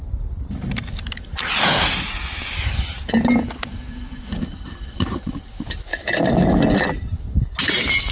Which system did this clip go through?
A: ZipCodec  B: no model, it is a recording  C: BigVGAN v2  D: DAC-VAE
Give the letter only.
B